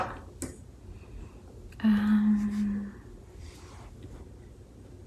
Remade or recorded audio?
recorded